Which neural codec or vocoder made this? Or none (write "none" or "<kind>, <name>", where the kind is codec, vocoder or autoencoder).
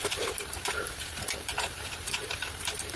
vocoder, BigVGAN v2